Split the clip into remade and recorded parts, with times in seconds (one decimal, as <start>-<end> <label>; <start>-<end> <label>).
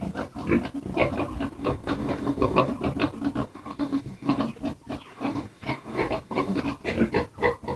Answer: 0.0-1.6 recorded; 1.6-2.7 remade; 2.7-3.4 recorded; 3.4-4.4 remade; 4.4-5.1 recorded; 5.1-6.6 remade; 6.6-7.8 recorded